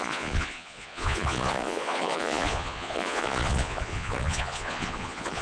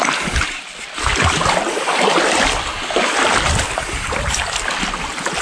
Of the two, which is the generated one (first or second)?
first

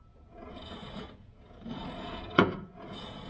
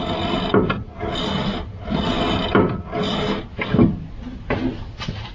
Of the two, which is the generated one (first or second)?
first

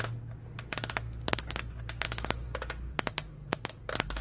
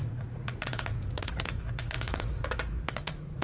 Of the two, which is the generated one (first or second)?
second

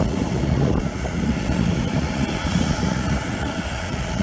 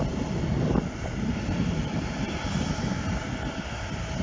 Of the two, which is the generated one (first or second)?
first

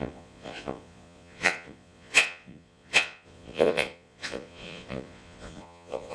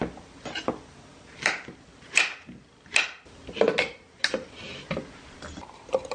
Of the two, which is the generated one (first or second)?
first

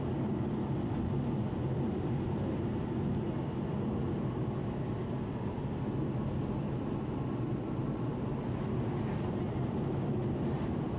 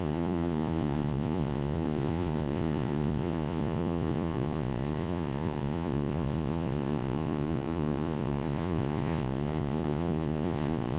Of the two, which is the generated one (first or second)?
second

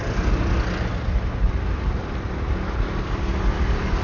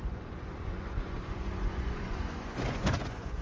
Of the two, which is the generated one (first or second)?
second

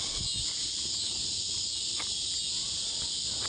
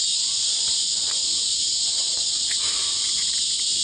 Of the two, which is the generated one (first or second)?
second